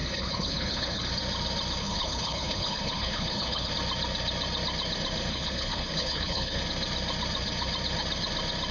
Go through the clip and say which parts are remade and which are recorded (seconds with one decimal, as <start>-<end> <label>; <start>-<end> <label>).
0.0-1.1 remade; 1.1-1.8 recorded; 1.8-3.7 remade; 3.7-5.3 recorded; 5.3-6.6 remade; 6.6-8.7 recorded